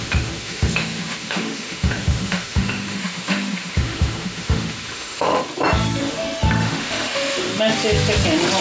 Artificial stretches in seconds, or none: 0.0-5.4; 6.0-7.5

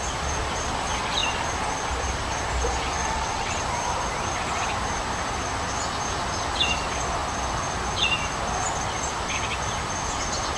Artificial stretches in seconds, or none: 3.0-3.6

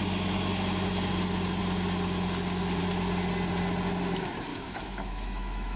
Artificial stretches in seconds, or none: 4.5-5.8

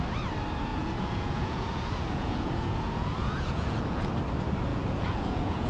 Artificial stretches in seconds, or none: 0.7-4.1; 4.7-5.7

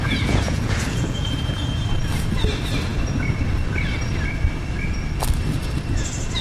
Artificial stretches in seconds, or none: 0.0-1.8

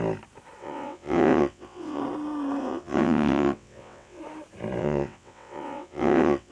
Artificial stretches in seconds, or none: 0.6-2.0; 2.6-4.2; 4.8-6.5